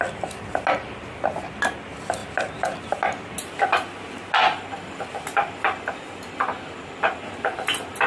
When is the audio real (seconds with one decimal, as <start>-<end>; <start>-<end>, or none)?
0.0-8.1